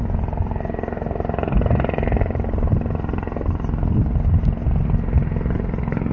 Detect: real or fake real